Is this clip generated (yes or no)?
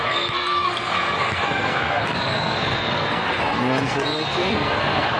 yes